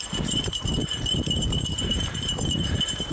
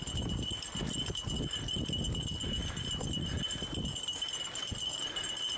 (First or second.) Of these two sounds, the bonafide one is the second